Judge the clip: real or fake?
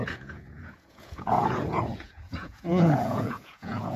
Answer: fake